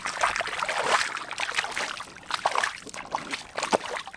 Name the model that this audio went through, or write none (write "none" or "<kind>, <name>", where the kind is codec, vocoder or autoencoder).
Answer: none